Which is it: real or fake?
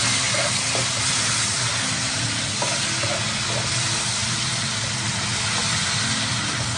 real